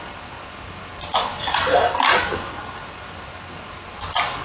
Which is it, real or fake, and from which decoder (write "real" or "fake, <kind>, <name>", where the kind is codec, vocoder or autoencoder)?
real